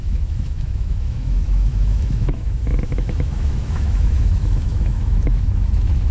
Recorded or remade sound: remade